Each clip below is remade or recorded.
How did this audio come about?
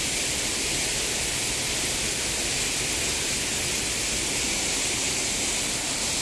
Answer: recorded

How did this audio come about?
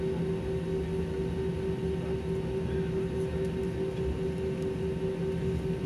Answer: recorded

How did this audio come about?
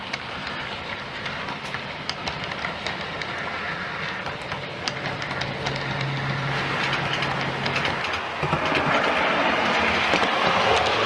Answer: recorded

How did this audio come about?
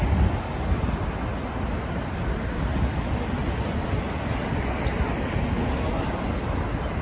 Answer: recorded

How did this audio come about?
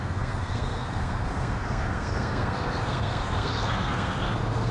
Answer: remade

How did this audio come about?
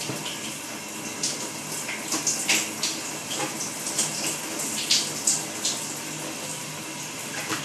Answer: recorded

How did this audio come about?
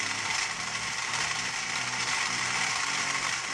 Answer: recorded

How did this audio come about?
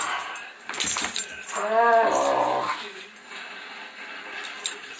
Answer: recorded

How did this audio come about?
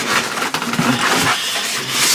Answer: recorded